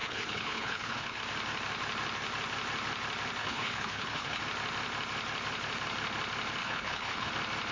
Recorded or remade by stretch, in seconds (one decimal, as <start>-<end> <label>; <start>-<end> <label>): 0.0-1.2 remade; 1.2-3.4 recorded; 3.4-4.4 remade; 4.4-6.6 recorded; 6.6-7.3 remade; 7.3-7.7 recorded